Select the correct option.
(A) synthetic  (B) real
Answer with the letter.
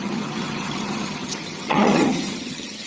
A